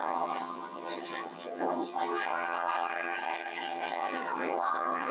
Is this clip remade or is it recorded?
remade